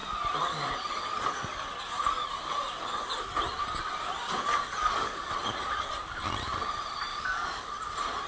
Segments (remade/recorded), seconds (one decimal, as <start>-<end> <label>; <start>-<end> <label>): 0.0-4.8 recorded; 4.8-5.3 remade; 5.3-7.1 recorded; 7.1-7.7 remade; 7.7-8.3 recorded